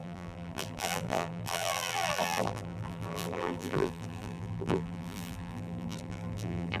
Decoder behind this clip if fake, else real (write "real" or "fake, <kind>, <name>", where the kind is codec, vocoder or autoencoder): fake, vocoder, BigVGAN v2